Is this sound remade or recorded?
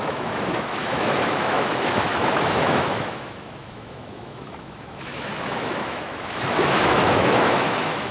remade